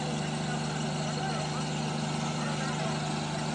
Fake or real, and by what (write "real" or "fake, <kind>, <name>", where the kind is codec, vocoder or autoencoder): real